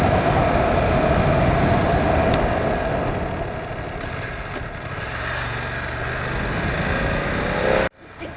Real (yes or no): yes